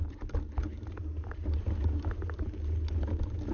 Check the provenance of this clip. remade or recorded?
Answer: recorded